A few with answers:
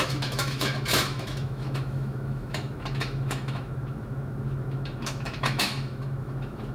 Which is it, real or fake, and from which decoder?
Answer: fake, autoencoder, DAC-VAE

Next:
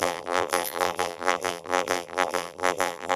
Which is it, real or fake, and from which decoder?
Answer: fake, vocoder, BigVGAN v2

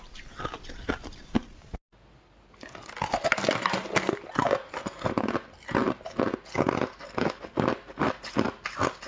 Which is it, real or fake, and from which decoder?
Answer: real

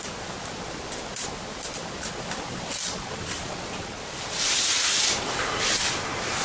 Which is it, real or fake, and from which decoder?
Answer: real